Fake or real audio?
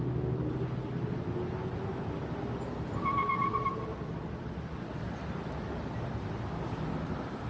real